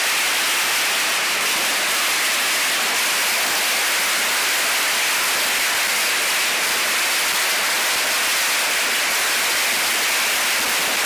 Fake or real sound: real